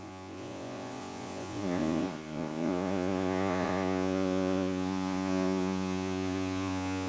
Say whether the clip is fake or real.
fake